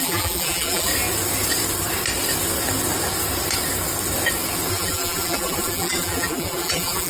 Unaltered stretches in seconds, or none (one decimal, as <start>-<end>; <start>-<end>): 0.9-4.7